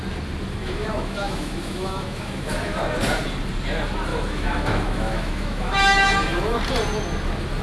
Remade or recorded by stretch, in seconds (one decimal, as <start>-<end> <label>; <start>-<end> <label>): 0.0-0.6 recorded; 0.6-2.8 remade; 2.8-4.1 recorded; 4.1-6.6 remade; 6.6-7.6 recorded